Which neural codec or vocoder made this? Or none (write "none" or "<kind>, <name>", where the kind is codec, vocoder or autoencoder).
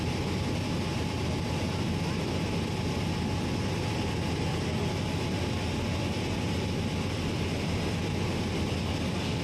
none